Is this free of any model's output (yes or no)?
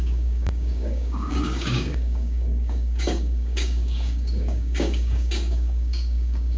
no